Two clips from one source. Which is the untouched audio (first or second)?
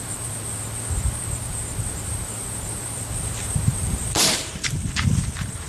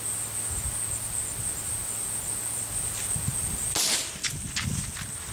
second